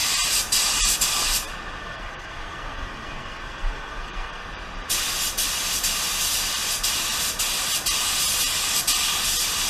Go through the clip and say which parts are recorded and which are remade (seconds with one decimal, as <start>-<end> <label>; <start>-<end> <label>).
0.0-1.8 recorded; 1.8-4.5 remade; 4.5-9.7 recorded